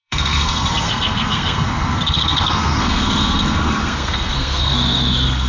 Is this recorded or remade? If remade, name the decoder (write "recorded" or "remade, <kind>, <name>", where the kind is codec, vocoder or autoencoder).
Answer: remade, codec, SNAC